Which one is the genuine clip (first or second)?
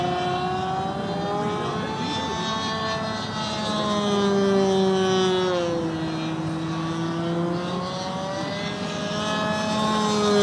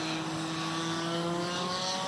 first